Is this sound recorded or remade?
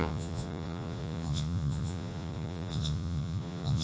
remade